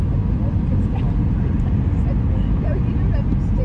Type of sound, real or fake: real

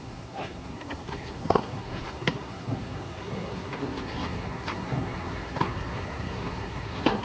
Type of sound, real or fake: fake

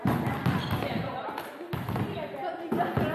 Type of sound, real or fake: real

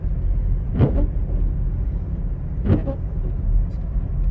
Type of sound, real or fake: real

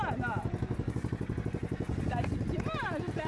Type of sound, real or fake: real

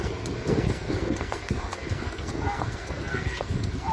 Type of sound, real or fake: fake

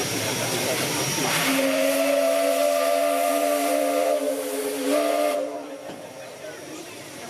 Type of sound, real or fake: fake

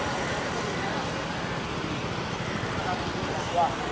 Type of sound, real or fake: real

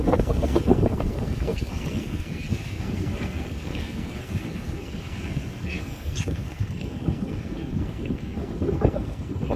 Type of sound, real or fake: fake